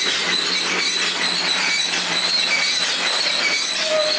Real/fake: fake